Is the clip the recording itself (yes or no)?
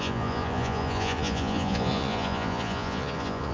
no